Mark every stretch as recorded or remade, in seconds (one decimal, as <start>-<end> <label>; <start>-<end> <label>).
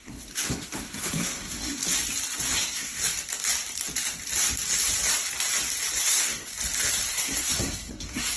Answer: 0.0-1.8 remade; 1.8-2.5 recorded; 2.5-3.0 remade; 3.0-6.0 recorded; 6.0-6.5 remade; 6.5-7.1 recorded; 7.1-8.4 remade